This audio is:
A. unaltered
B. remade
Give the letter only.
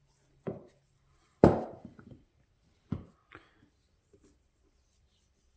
B